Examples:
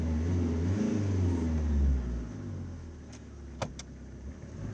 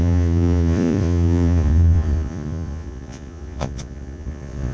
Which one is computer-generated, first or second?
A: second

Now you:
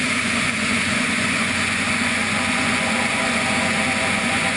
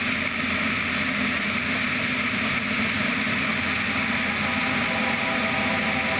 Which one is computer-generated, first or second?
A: first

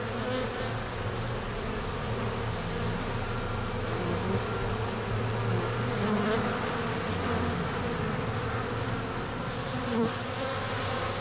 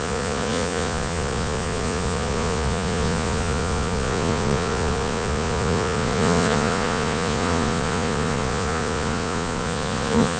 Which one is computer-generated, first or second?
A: second